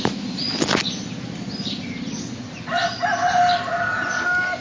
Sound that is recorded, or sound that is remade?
recorded